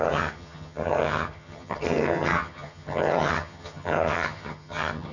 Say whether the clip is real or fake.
fake